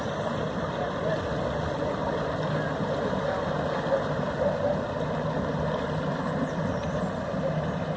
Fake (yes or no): no